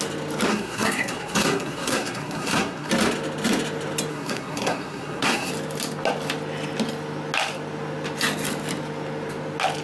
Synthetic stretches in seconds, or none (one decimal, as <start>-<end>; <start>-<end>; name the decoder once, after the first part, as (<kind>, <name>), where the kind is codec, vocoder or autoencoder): 0.5-2.9 (codec, SNAC); 4.1-5.5